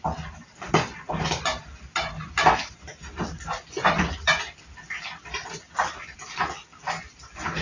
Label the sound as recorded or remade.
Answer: recorded